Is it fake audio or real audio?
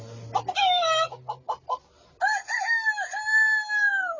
real